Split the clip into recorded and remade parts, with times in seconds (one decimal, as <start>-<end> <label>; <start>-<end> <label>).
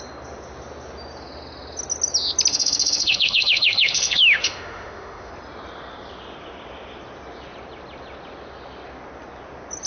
0.0-2.5 recorded; 2.5-5.3 remade; 5.3-9.9 recorded